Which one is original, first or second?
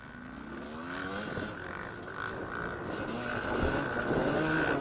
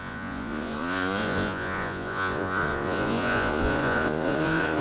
first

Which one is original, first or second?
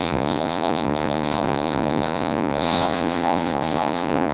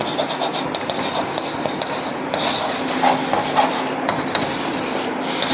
second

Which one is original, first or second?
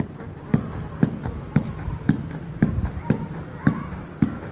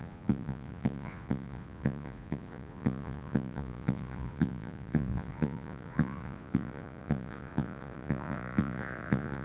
first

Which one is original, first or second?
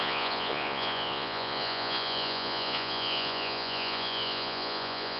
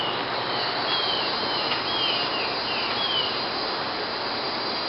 second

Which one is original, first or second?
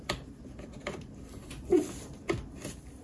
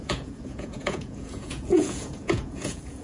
first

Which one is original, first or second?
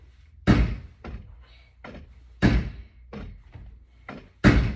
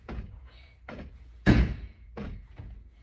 first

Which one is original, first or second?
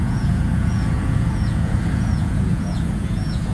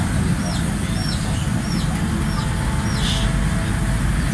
second